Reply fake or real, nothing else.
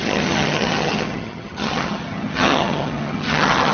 fake